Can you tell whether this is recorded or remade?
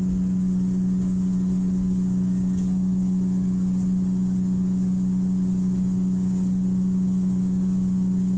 recorded